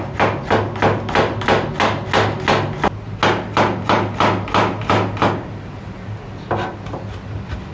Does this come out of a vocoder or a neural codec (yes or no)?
no